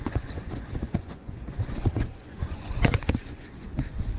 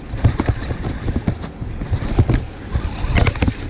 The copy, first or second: first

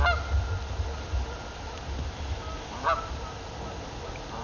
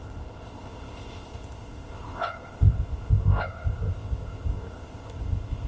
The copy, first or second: second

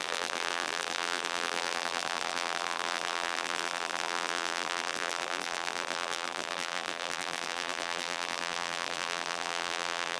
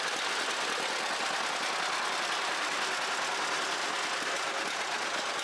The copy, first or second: first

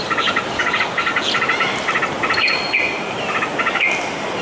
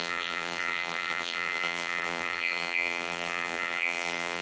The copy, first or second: second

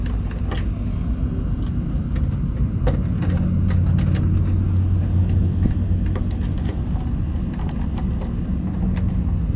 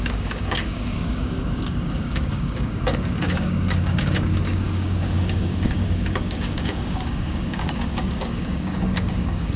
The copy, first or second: second